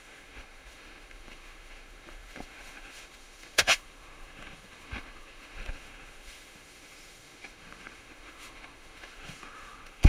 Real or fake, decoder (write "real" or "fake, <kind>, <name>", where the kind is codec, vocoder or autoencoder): fake, autoencoder, DAC-VAE